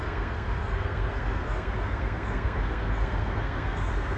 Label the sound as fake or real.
fake